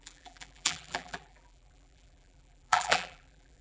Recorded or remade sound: remade